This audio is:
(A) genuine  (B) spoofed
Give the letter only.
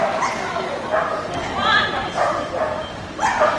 A